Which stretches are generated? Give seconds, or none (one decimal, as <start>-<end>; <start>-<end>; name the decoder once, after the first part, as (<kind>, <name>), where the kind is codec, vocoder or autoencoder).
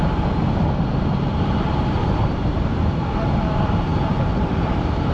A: none